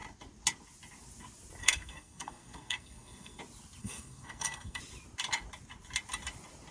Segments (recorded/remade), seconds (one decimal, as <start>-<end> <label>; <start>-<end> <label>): 0.0-1.6 recorded; 1.6-3.4 remade; 3.4-3.8 recorded; 3.8-4.8 remade; 4.8-6.7 recorded